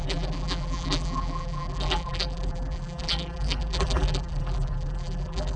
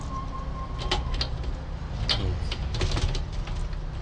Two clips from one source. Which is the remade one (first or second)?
first